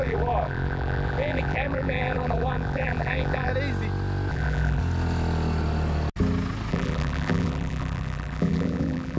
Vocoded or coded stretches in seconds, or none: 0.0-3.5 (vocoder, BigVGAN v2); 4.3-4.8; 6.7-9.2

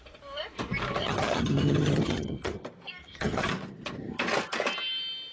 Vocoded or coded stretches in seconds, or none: 1.0-2.6 (vocoder, HiFi-GAN); 3.0-3.5

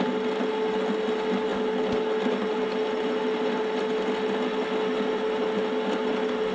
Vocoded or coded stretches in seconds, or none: none

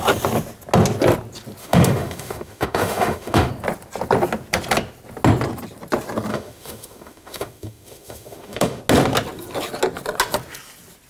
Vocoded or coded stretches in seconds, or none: 1.6-3.5 (autoencoder, DAC-VAE); 6.3-8.8

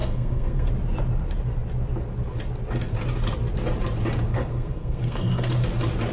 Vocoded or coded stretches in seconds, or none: 0.0-0.7 (codec, SNAC); 4.3-5.5

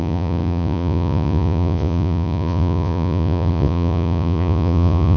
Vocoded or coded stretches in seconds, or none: 0.0-5.2 (vocoder, Vocos)

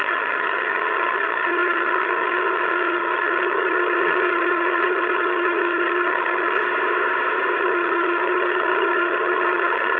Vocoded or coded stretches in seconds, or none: 0.0-6.6 (vocoder, HiFi-GAN); 7.6-10.0